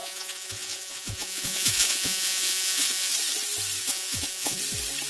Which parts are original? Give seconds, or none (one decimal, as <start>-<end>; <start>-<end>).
3.1-3.8; 4.6-5.1